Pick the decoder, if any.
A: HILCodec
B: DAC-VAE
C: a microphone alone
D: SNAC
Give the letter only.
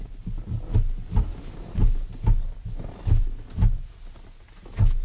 C